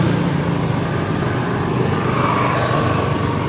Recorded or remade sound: recorded